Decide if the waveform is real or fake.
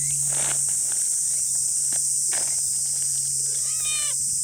real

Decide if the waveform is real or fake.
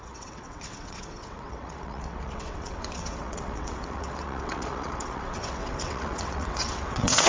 fake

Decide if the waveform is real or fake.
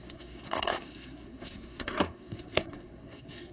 fake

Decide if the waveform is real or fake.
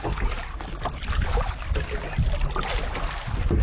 real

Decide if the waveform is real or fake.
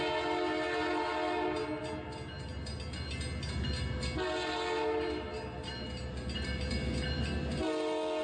real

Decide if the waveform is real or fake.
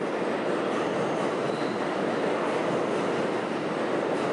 real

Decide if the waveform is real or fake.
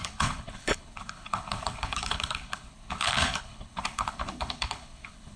fake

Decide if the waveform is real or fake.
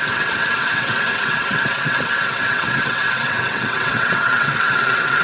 fake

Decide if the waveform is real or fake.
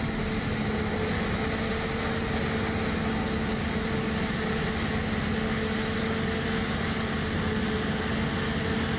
real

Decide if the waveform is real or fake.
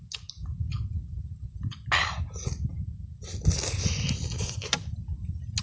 real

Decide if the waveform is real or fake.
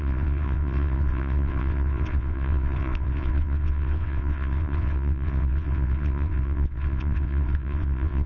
fake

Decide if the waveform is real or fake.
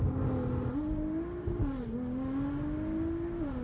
real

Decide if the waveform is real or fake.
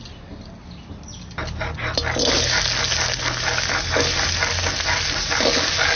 real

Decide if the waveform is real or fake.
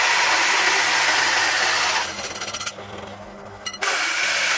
real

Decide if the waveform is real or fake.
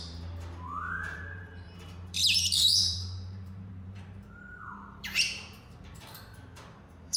fake